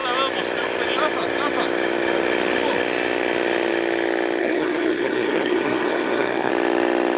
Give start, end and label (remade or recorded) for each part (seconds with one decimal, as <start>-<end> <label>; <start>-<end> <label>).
0.0-4.4 recorded; 4.4-6.5 remade; 6.5-7.2 recorded

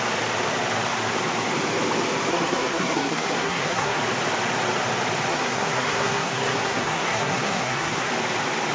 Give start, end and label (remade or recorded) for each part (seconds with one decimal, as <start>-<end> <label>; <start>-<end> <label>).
0.0-2.3 recorded; 2.3-4.0 remade; 4.0-5.3 recorded; 5.3-8.1 remade; 8.1-8.7 recorded

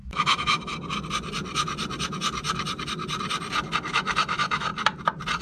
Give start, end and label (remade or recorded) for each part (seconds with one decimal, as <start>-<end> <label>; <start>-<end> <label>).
0.0-0.7 remade; 0.7-3.9 recorded; 3.9-4.7 remade; 4.7-5.4 recorded

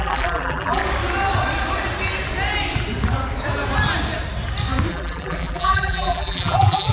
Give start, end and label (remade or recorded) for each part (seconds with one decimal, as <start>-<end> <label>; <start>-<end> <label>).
0.0-0.8 remade; 0.8-4.9 recorded; 4.9-6.9 remade

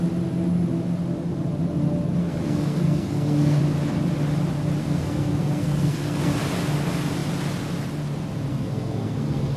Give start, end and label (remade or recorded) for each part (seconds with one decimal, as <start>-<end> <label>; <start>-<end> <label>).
0.0-2.2 recorded; 2.2-3.6 remade; 3.6-4.8 recorded; 4.8-6.3 remade; 6.3-8.5 recorded; 8.5-9.6 remade